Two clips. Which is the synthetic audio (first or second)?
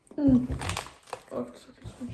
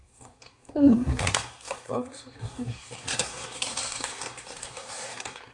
second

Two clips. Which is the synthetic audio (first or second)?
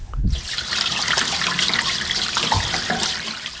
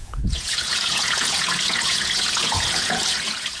second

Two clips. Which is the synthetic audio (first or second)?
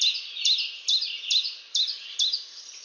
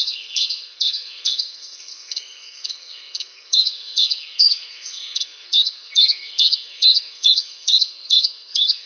second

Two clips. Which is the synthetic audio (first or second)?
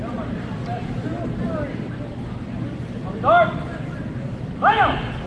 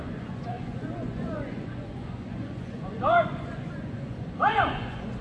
second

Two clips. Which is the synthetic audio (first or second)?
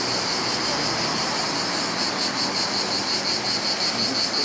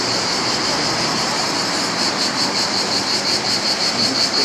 second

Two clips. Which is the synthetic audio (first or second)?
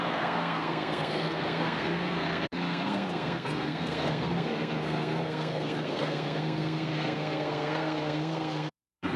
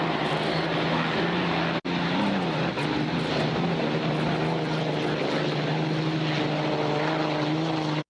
first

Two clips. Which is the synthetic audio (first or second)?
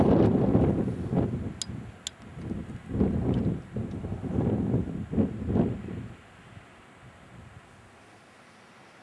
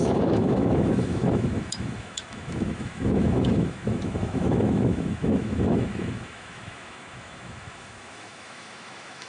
second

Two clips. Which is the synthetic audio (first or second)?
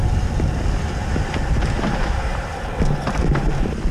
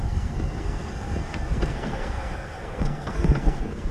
second